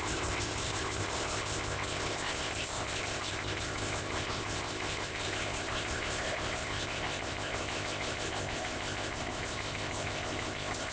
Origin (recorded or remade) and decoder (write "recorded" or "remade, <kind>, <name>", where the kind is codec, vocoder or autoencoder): remade, codec, ZipCodec